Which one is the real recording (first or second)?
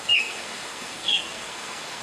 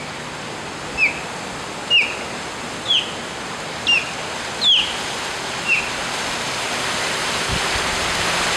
second